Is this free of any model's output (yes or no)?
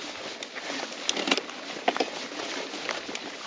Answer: yes